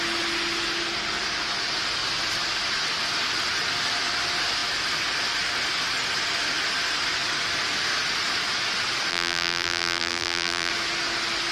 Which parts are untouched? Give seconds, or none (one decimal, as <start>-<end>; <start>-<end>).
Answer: 0.0-9.1; 10.7-11.5